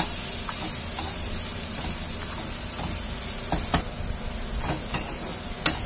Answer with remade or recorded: recorded